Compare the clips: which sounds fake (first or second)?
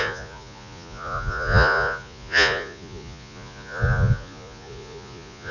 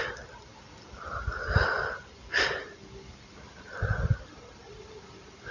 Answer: first